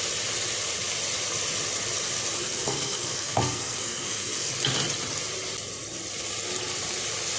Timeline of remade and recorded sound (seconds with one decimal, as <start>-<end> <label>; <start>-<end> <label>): 0.0-2.4 recorded; 2.4-4.5 remade; 4.5-7.4 recorded